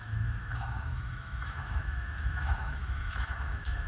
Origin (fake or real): fake